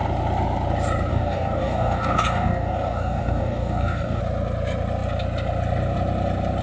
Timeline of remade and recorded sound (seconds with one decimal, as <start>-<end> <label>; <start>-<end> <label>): 0.0-1.1 recorded; 1.1-4.2 remade; 4.2-6.6 recorded